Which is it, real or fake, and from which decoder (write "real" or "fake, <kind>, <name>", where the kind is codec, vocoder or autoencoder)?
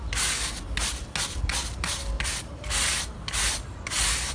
real